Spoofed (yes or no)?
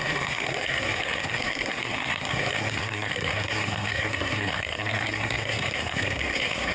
yes